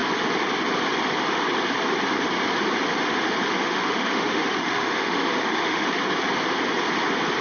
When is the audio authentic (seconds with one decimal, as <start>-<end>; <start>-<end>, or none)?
0.0-3.6; 5.9-7.4

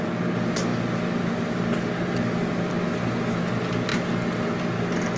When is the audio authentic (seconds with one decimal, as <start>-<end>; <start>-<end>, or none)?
0.0-5.2

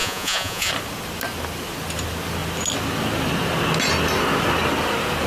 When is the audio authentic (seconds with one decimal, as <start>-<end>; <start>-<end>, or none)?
0.7-5.3

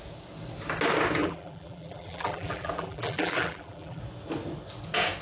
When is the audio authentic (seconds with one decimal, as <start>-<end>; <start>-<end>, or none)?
0.0-1.2; 4.0-5.2